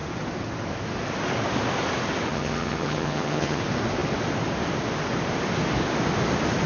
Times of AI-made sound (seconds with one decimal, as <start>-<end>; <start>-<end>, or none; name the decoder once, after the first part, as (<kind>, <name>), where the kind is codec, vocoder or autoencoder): 2.3-3.6 (vocoder, HiFi-GAN)